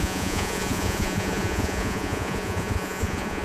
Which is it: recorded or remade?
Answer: remade